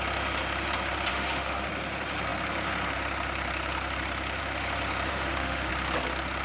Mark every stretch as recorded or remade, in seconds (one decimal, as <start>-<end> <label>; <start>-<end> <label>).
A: 0.0-1.1 recorded; 1.1-1.7 remade; 1.7-5.1 recorded; 5.1-5.7 remade; 5.7-6.4 recorded

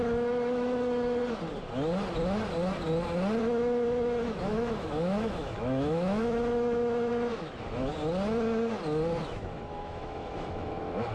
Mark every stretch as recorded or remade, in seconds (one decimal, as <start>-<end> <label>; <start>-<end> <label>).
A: 0.0-1.2 remade; 1.2-3.4 recorded; 3.4-7.9 remade; 7.9-9.2 recorded; 9.2-11.1 remade